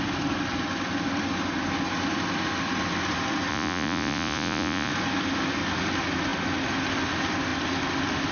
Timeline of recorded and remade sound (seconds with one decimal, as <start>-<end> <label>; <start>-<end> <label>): 0.0-3.5 recorded; 3.5-4.9 remade; 4.9-8.3 recorded